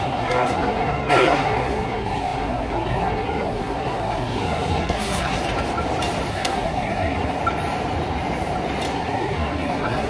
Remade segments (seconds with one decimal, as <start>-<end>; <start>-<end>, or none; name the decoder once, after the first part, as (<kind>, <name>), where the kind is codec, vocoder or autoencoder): 0.0-5.4 (codec, SNAC); 6.3-7.4; 8.9-10.1